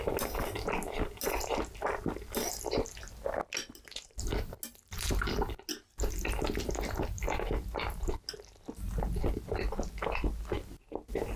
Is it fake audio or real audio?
real